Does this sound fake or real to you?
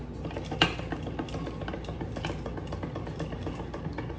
real